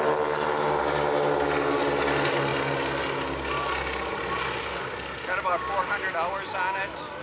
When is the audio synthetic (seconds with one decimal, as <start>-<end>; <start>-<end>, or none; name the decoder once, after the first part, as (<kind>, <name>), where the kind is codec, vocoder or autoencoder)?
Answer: none